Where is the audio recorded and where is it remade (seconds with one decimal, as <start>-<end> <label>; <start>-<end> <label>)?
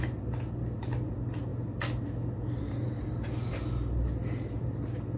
0.0-5.2 recorded